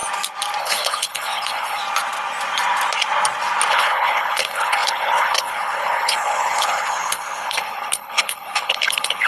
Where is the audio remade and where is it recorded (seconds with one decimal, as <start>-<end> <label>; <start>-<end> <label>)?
0.0-0.6 recorded; 0.6-1.8 remade; 1.8-3.7 recorded; 3.7-9.3 remade